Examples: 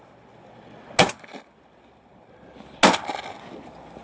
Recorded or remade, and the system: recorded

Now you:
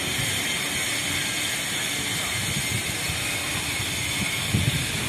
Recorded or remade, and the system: recorded